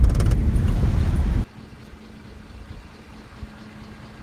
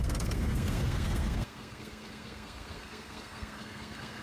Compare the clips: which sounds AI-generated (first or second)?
second